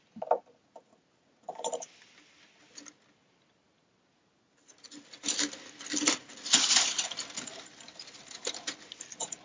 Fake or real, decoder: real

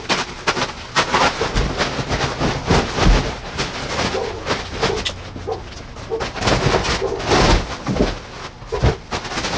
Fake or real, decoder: real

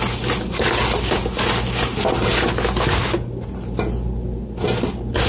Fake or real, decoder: real